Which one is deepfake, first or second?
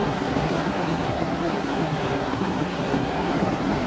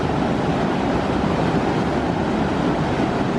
first